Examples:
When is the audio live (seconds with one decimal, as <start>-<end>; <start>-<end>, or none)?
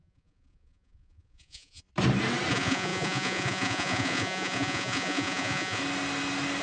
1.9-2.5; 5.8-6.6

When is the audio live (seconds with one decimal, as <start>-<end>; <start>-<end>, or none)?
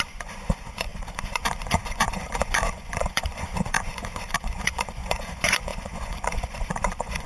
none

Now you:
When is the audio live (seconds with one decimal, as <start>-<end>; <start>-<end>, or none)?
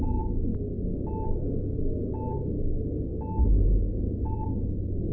0.5-3.6